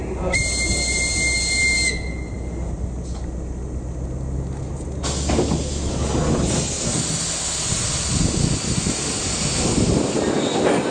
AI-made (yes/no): no